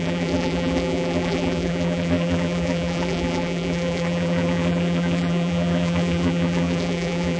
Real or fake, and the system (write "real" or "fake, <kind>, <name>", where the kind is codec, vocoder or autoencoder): fake, vocoder, BigVGAN v2